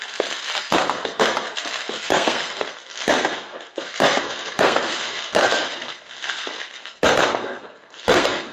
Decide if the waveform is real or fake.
fake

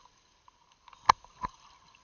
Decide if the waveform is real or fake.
real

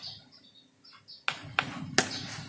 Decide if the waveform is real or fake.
real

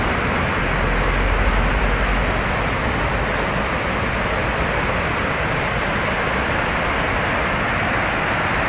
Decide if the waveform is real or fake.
real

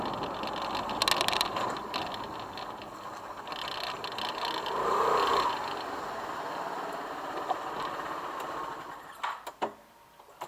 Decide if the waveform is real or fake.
real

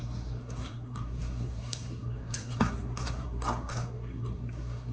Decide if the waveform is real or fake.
fake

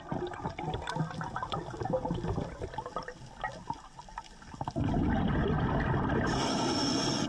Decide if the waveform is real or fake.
real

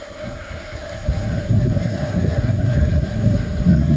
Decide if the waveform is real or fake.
fake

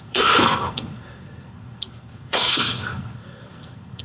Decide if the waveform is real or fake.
fake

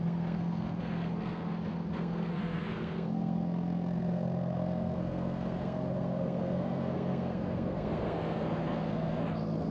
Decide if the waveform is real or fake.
fake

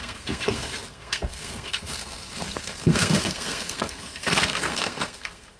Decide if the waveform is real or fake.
fake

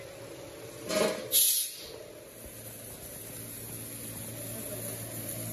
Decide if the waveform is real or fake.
real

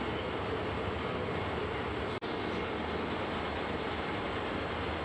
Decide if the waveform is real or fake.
real